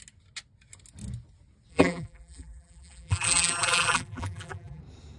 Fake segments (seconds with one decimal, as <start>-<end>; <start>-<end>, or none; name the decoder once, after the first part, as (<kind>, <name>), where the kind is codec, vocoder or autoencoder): 1.7-4.8 (vocoder, BigVGAN v2)